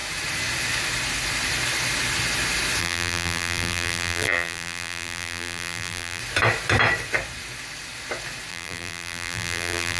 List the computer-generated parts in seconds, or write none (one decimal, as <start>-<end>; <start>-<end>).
2.8-6.2; 8.5-10.0